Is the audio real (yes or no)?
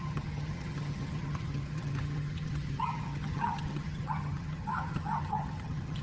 no